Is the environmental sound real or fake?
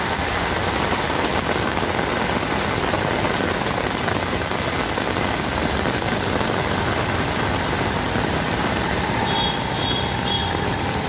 real